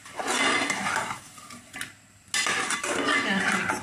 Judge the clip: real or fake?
real